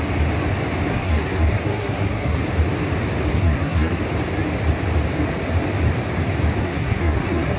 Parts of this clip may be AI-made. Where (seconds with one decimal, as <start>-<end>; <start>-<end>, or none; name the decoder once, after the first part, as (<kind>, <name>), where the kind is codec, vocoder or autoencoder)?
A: 0.9-2.4 (codec, SNAC); 3.3-4.0; 6.6-7.6